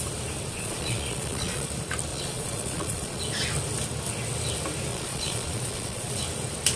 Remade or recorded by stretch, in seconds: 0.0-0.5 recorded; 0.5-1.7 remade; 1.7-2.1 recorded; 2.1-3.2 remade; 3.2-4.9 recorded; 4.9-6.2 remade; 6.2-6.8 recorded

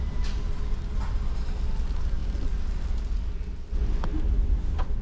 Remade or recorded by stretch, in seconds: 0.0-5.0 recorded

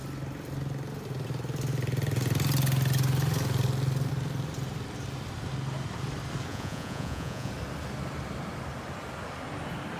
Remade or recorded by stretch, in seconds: 0.0-6.5 recorded; 6.5-7.5 remade; 7.5-10.0 recorded

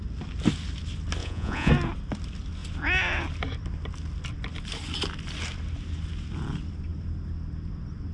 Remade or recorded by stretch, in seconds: 0.0-1.2 recorded; 1.2-1.7 remade; 1.7-8.1 recorded